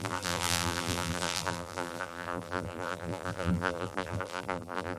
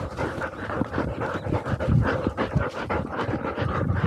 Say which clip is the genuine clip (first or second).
second